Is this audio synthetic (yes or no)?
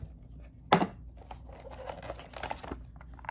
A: no